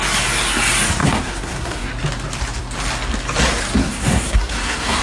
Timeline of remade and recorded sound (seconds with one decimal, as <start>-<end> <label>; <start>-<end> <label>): 0.0-1.0 recorded; 1.0-1.9 remade; 1.9-3.8 recorded; 3.8-5.0 remade